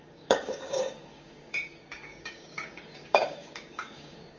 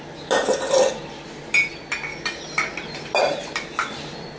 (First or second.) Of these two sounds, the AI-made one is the first